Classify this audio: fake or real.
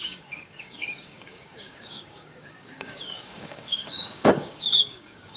fake